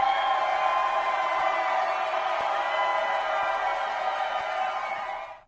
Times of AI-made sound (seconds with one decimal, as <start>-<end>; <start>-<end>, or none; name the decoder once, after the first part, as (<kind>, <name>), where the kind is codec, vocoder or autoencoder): none